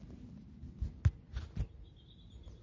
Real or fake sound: real